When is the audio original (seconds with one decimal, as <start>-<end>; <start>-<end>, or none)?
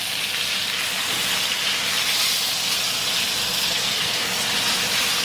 0.0-3.4; 4.4-5.2